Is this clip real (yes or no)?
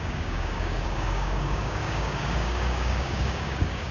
no